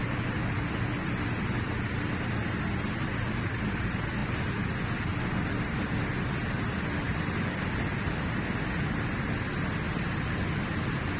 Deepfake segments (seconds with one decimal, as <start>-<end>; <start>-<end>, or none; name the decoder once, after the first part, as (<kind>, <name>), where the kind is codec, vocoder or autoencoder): none